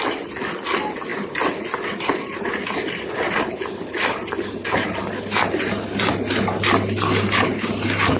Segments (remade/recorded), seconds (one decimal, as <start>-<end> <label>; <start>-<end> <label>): 0.0-8.2 recorded